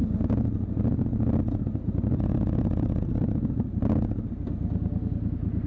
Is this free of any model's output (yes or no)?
yes